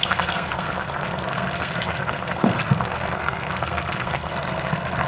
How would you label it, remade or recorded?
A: remade